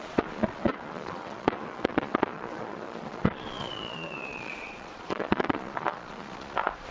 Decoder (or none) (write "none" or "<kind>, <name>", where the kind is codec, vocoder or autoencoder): vocoder, Vocos